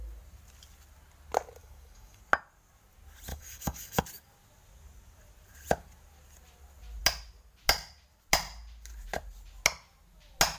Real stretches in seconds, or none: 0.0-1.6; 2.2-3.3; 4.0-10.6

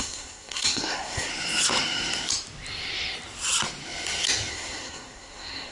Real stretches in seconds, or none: 1.3-4.5

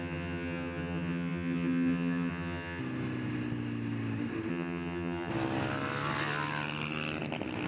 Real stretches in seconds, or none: 2.8-4.5; 5.3-7.7